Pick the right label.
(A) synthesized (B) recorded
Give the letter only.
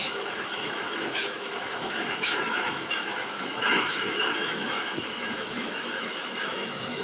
A